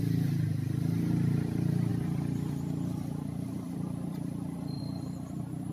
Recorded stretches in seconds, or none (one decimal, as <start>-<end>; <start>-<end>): 0.0-1.9; 4.8-5.7